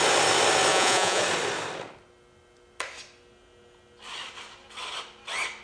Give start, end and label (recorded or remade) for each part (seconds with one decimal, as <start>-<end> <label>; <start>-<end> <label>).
0.0-0.7 recorded; 0.7-1.2 remade; 1.2-5.6 recorded